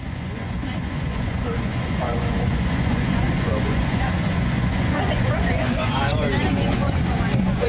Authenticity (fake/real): fake